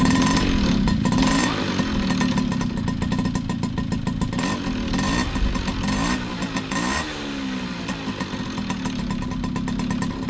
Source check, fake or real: real